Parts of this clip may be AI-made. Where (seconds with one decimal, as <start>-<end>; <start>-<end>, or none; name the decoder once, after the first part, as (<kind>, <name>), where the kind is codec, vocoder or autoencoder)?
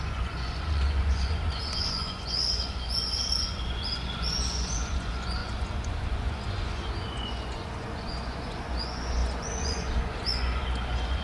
0.0-11.2 (vocoder, Vocos)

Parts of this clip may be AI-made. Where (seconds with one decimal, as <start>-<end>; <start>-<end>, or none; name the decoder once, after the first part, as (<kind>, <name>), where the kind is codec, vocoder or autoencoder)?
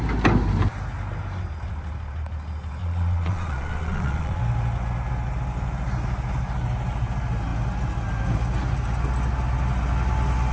2.8-4.4 (vocoder, Vocos)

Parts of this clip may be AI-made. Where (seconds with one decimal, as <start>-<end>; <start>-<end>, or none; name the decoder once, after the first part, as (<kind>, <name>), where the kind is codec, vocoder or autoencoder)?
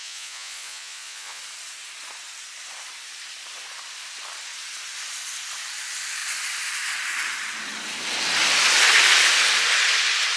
0.0-1.4 (vocoder, Vocos)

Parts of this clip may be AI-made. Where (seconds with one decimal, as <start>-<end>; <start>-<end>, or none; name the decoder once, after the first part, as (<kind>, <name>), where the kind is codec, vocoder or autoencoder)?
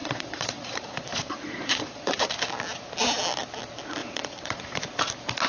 0.0-2.3 (vocoder, Vocos); 4.0-4.8